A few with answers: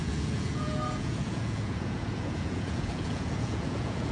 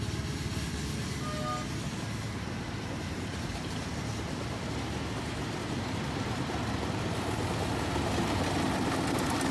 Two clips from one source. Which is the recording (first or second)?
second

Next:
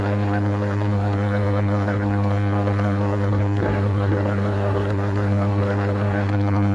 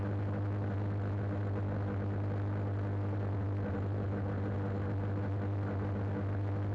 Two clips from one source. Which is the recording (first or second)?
second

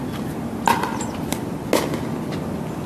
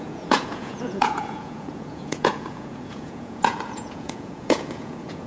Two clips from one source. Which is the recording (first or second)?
first